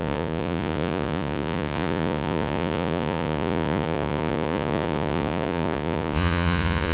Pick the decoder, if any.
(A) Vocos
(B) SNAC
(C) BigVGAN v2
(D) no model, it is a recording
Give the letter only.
A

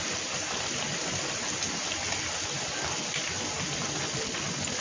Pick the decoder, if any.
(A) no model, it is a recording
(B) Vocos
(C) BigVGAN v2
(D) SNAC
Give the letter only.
A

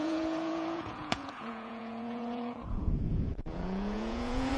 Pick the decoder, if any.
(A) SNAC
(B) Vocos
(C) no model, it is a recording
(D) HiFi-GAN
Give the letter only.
B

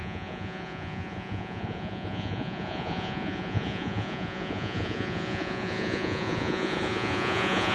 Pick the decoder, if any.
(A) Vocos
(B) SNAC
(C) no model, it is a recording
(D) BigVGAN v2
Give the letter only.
A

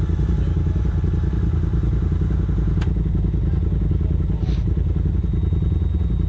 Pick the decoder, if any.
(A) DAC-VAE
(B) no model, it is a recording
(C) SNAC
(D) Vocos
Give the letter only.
B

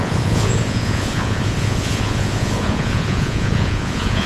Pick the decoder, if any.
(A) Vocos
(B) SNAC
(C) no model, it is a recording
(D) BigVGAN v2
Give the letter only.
A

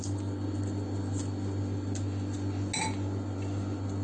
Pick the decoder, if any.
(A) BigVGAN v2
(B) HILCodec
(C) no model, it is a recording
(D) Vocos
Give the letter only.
C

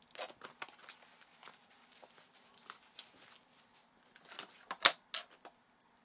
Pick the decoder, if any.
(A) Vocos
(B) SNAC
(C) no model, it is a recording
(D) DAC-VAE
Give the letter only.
C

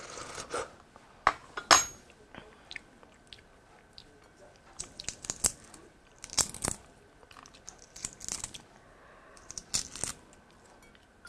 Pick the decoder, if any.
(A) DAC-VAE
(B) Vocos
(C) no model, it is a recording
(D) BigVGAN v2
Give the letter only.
C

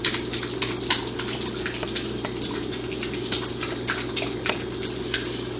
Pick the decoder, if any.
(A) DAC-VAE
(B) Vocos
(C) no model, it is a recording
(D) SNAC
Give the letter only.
C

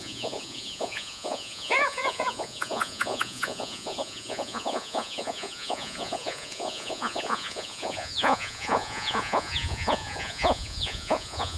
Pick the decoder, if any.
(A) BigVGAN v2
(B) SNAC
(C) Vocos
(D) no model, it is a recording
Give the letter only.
C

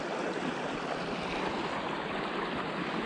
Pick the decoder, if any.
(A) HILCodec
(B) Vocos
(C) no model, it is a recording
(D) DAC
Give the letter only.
C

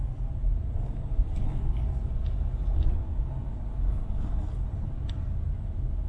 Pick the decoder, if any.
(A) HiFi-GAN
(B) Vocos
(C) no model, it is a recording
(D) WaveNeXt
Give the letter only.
C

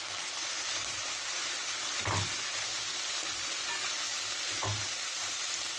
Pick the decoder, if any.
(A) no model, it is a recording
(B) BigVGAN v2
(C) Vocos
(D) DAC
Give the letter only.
A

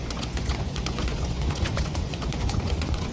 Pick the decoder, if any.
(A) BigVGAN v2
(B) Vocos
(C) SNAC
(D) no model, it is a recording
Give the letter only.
B